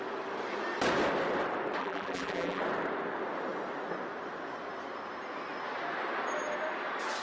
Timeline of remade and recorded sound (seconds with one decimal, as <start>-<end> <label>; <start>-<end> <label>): 0.0-1.8 recorded; 1.8-2.6 remade; 2.6-7.2 recorded